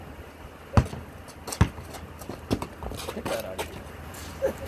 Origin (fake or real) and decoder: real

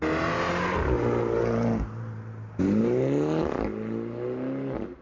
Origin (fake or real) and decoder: real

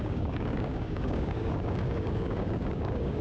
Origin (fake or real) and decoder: fake, codec, DAC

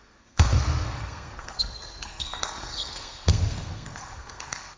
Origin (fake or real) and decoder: fake, codec, SNAC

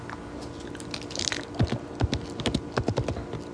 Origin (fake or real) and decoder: real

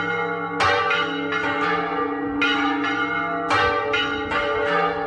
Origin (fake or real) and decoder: real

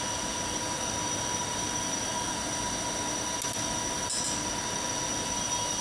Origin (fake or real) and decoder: real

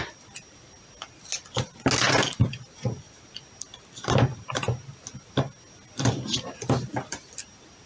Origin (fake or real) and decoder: real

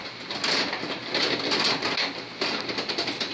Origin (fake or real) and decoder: real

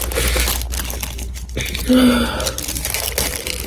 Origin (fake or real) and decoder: real